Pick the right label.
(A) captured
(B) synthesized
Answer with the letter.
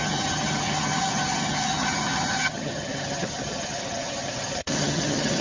B